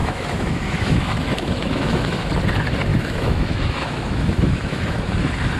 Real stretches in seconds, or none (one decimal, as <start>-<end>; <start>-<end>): 2.3-2.9; 5.0-5.6